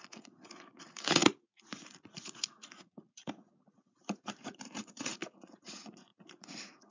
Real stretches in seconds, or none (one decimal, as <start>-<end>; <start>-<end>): none